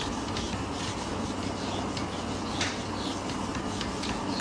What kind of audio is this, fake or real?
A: real